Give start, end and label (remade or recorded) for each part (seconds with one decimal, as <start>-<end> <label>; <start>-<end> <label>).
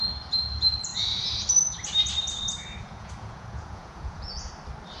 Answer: 0.0-2.8 recorded; 2.8-4.5 remade; 4.5-5.0 recorded